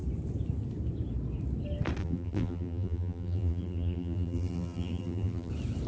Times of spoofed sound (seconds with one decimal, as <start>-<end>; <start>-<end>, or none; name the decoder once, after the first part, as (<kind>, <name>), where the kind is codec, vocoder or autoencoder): 2.0-5.5 (vocoder, BigVGAN v2)